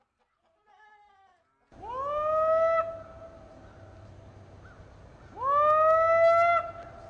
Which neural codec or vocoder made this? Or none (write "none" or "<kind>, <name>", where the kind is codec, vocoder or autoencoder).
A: none